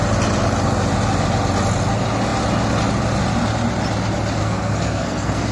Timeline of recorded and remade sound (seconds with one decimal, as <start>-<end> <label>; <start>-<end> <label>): 0.0-4.4 recorded; 4.4-5.5 remade